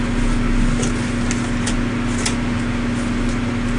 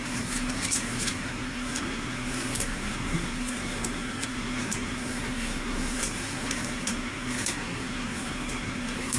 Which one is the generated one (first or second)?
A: second